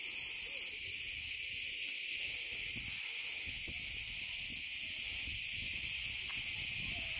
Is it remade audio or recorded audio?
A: recorded